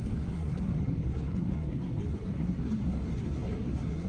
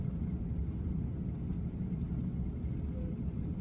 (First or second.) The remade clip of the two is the first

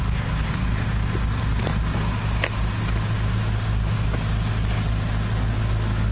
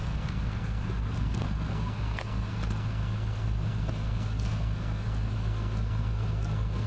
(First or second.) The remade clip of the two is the second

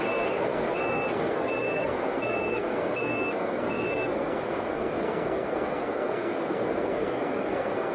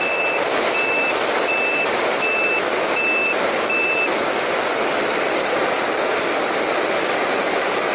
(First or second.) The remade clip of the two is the first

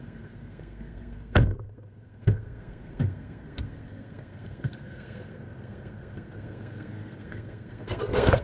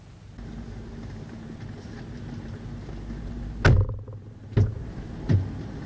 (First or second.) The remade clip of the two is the first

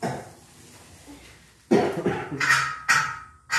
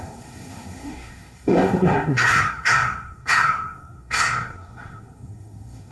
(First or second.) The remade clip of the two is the second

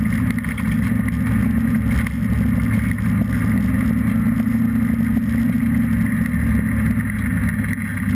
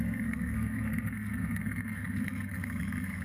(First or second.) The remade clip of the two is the second